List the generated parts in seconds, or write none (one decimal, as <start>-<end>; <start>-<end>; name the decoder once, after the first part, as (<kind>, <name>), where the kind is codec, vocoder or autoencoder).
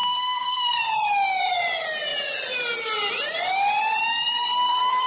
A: 0.0-0.8 (codec, SNAC)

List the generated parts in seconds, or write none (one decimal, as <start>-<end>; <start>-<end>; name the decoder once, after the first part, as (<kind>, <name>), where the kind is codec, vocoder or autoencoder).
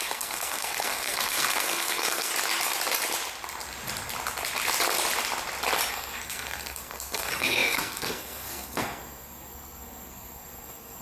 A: 0.0-2.3 (codec, SNAC); 5.9-11.0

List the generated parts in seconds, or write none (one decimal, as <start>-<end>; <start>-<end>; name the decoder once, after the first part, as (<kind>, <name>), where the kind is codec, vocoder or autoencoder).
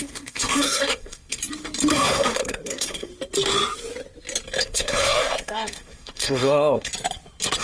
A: 0.0-1.4 (codec, SNAC); 1.9-3.1; 4.6-6.9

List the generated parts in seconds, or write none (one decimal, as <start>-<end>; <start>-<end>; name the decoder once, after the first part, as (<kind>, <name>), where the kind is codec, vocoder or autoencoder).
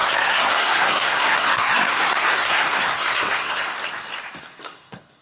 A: 0.0-3.7 (codec, SNAC); 4.4-5.2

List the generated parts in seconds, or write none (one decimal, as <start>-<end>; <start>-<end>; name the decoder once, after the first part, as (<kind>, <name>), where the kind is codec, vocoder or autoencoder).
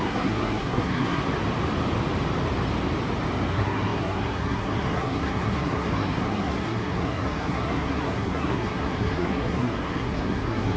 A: 0.0-1.2 (codec, SNAC); 3.5-10.8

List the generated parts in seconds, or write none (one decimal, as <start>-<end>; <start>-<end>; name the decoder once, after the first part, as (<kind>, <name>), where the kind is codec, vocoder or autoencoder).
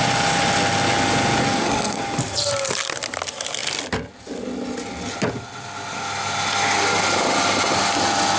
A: 1.4-2.0 (codec, SNAC)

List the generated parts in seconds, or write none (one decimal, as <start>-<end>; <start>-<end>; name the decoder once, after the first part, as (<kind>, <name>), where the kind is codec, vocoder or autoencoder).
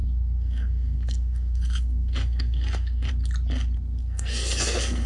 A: 0.0-3.1 (codec, SNAC); 4.0-5.1